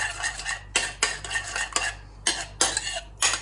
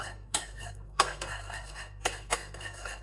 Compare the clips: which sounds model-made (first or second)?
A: second